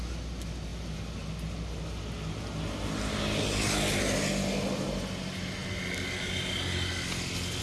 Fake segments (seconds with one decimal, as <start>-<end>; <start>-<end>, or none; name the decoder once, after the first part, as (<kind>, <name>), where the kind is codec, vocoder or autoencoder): none

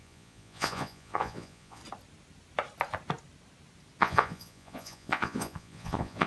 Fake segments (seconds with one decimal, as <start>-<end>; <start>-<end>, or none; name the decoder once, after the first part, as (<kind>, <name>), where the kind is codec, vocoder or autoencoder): 0.0-1.8 (vocoder, Vocos); 4.0-6.3

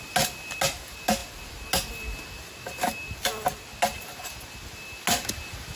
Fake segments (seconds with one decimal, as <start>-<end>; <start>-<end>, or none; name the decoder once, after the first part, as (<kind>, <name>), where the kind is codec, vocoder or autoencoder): none

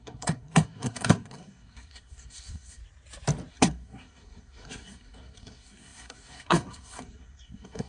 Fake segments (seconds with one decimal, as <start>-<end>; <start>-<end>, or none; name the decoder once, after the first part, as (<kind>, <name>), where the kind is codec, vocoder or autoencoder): 0.0-2.8 (codec, SNAC); 3.5-7.9

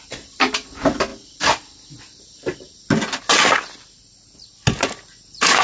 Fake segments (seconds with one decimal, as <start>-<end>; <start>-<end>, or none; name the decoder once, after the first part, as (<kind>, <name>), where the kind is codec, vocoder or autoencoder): none

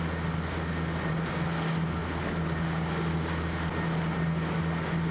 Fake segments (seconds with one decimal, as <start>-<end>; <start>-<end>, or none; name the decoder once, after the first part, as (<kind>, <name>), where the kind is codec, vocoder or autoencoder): none

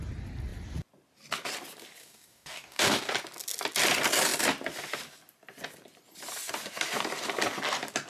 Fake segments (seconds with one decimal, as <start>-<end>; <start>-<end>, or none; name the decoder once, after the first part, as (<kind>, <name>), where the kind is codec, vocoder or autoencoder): 2.0-3.1 (codec, DAC)

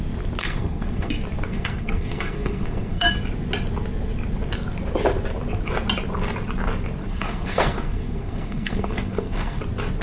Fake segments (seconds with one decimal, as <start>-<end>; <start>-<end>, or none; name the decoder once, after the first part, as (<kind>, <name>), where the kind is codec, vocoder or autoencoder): 0.4-1.1 (codec, SNAC); 1.5-3.1; 7.0-9.6